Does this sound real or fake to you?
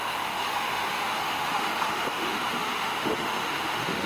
fake